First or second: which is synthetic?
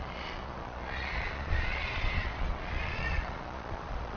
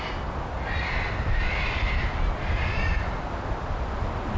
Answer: first